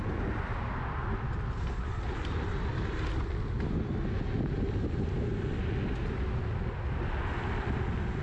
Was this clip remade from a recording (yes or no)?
no